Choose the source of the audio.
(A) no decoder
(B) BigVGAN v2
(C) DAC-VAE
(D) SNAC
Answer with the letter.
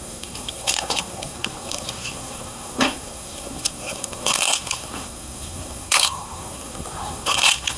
D